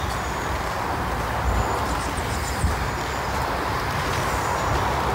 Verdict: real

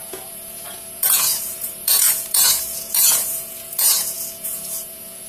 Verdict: fake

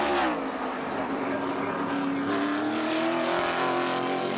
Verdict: real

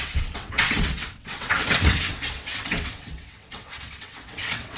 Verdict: fake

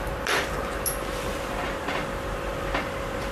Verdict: real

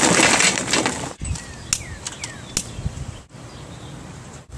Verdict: real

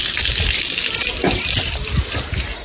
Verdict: real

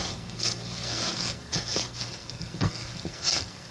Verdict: fake